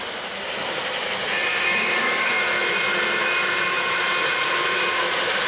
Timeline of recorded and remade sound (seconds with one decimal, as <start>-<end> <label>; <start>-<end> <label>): 0.0-1.5 recorded; 1.5-2.3 remade; 2.3-5.5 recorded